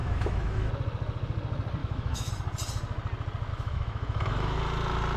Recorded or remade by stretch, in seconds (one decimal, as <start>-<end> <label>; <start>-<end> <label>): 0.0-0.7 remade; 0.7-1.8 recorded; 1.8-2.3 remade; 2.3-3.5 recorded; 3.5-4.6 remade; 4.6-5.2 recorded